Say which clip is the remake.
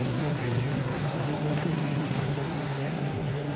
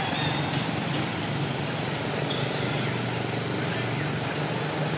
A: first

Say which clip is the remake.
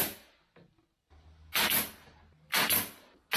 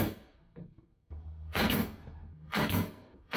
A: second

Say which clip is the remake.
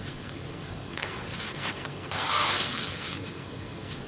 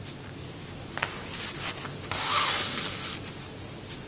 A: first